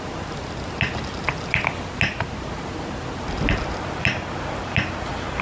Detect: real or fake real